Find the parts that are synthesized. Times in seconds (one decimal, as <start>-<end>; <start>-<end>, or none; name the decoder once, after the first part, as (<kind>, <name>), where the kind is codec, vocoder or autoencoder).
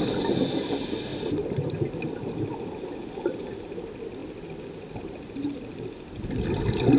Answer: none